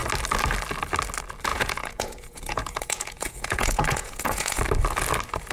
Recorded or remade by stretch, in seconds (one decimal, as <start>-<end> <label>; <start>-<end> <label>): 0.0-1.5 recorded; 1.5-4.6 remade; 4.6-5.5 recorded